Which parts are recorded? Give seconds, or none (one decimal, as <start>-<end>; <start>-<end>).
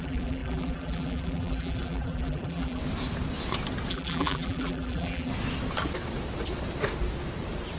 2.8-3.9; 5.3-7.8